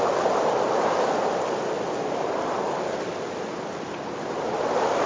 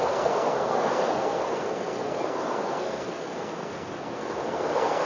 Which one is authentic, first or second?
first